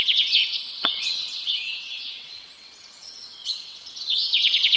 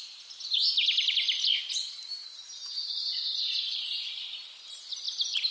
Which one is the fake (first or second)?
first